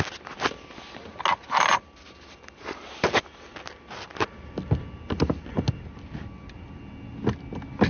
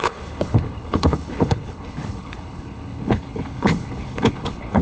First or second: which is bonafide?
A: first